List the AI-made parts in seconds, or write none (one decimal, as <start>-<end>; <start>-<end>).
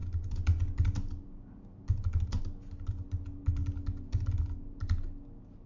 none